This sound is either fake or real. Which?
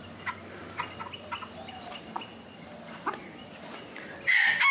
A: real